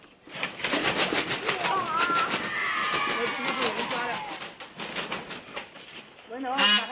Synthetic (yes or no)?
no